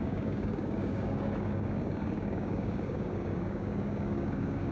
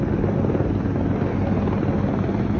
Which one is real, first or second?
second